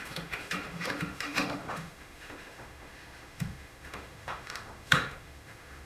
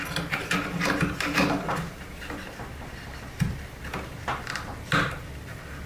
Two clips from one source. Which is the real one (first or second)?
second